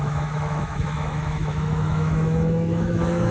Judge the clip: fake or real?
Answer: fake